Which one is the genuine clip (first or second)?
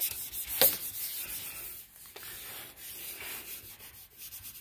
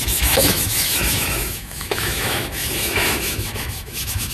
first